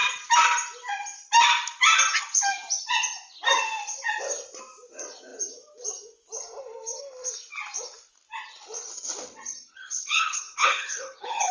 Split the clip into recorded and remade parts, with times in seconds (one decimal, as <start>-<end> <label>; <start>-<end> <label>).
0.0-9.7 recorded; 9.7-11.5 remade